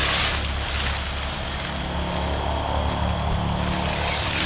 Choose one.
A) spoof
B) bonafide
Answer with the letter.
B